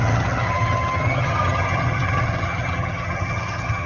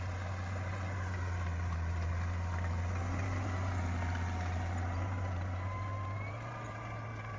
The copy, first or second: first